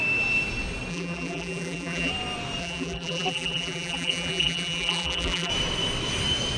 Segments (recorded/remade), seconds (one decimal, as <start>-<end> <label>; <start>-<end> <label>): 0.0-0.9 recorded; 0.9-2.1 remade; 2.1-2.6 recorded; 2.6-5.5 remade; 5.5-6.6 recorded